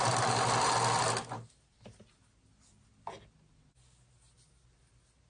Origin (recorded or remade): recorded